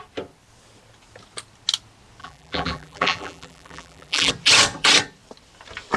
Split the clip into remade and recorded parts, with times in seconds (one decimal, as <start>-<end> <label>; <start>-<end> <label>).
0.0-2.2 recorded; 2.2-4.3 remade; 4.3-6.0 recorded